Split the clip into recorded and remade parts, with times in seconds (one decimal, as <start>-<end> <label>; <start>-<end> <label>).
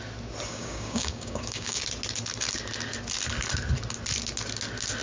0.0-0.5 recorded; 0.5-1.8 remade; 1.8-5.0 recorded